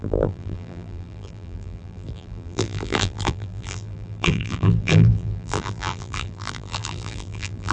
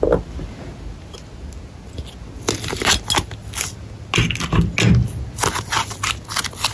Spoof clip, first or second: first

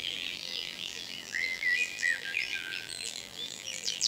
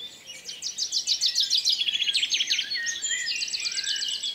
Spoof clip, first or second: first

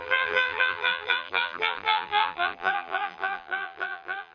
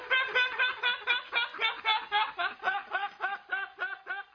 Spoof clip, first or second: first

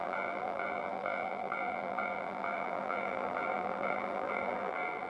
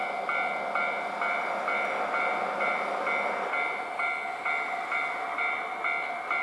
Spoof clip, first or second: first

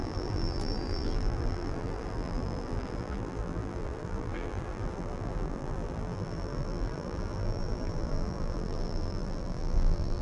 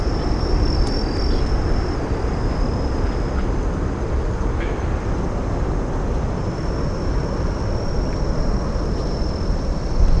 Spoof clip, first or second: first